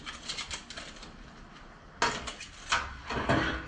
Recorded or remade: recorded